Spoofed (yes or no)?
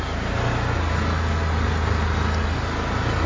no